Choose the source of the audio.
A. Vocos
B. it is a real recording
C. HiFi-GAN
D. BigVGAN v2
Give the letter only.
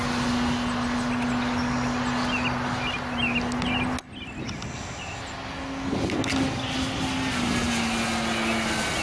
B